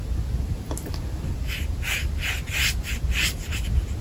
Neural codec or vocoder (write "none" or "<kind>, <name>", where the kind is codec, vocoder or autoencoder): none